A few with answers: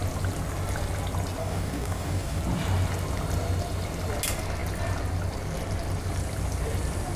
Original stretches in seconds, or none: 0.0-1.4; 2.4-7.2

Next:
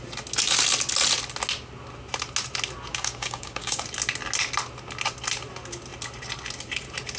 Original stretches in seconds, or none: 0.0-2.9; 3.8-7.2

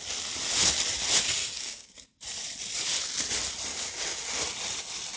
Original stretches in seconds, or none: 0.0-1.4; 2.2-3.7; 4.2-5.2

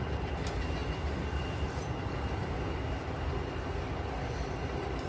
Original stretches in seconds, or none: 0.0-5.1

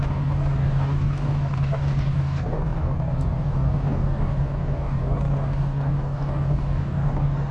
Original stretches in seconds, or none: none